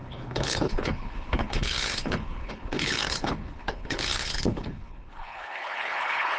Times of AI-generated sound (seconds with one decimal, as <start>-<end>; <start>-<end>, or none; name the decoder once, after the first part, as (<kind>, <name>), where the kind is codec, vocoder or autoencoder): 0.0-6.4 (codec, HILCodec)